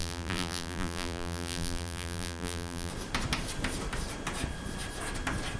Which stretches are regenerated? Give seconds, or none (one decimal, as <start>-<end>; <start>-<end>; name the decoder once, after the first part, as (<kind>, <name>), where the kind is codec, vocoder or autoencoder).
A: 0.0-2.9 (vocoder, BigVGAN v2)